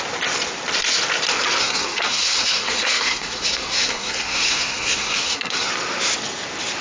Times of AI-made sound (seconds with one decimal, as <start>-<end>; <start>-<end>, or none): 1.6-5.7